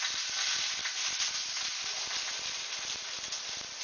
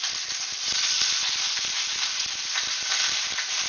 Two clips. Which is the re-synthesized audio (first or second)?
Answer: second